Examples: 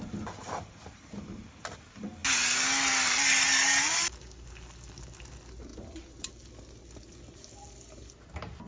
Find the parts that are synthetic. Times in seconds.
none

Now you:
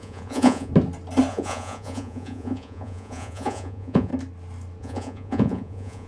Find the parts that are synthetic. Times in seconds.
0.0-0.7 (vocoder, Vocos); 1.3-4.1; 4.8-6.1